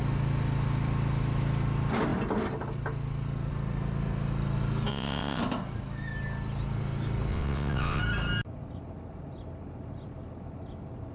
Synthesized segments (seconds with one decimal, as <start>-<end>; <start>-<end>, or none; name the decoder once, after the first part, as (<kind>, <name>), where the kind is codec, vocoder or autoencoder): 4.9-5.4 (vocoder, WaveNeXt); 7.3-8.0